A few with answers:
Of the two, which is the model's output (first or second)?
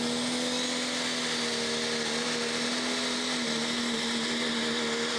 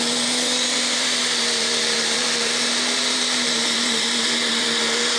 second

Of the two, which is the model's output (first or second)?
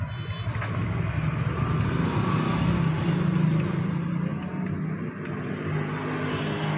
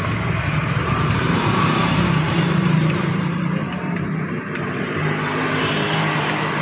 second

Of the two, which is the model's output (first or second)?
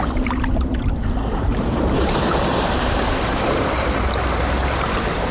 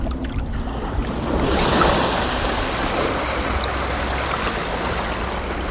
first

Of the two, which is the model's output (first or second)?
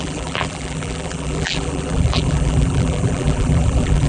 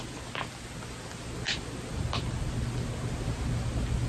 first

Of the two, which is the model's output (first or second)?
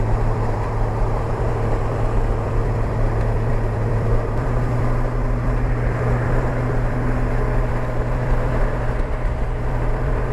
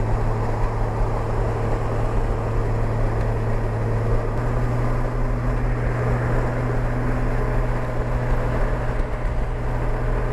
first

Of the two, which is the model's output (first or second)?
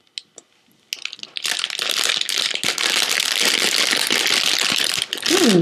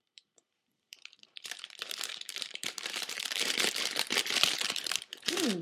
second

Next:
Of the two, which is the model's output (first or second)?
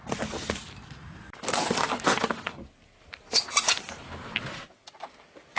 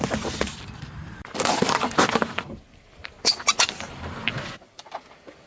second